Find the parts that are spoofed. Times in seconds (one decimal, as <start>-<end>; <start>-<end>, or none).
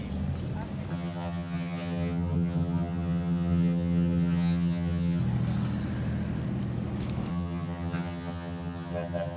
0.9-5.2; 7.3-9.4